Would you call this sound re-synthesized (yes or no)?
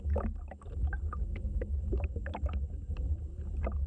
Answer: no